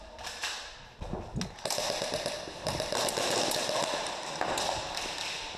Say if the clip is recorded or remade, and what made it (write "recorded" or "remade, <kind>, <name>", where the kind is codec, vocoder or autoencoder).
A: recorded